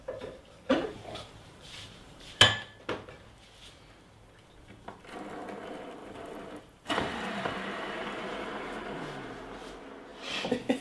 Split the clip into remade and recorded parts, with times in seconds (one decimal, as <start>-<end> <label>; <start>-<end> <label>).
0.0-0.7 recorded; 0.7-2.4 remade; 2.4-6.0 recorded; 6.0-9.3 remade; 9.3-10.8 recorded